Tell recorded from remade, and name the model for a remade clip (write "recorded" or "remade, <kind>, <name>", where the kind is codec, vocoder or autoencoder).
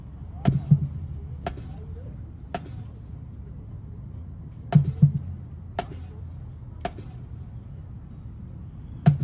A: recorded